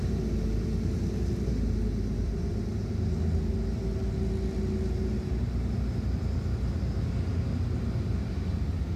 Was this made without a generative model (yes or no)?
yes